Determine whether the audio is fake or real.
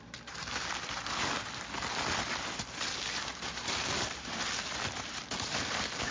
fake